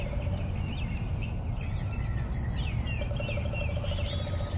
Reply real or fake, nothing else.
real